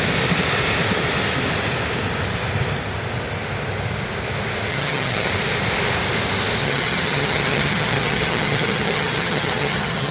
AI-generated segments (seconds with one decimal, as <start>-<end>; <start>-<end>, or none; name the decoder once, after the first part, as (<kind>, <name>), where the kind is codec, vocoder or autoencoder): 4.7-5.3 (vocoder, HiFi-GAN); 6.6-10.1